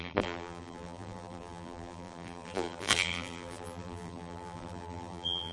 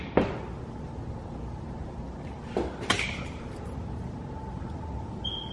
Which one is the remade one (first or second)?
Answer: first